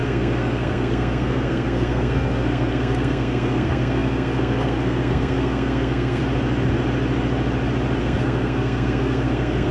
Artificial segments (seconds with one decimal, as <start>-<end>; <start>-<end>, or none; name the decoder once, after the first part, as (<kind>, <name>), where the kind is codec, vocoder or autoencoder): 0.0-6.2 (codec, SNAC); 8.0-9.7